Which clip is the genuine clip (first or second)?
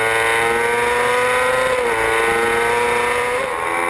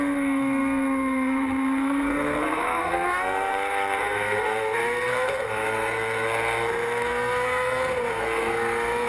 first